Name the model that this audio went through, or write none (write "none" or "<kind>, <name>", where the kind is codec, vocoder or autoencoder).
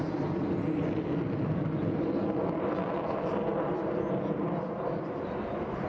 none